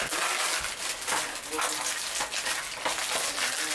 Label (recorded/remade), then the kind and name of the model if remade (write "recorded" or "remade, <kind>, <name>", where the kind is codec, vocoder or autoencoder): recorded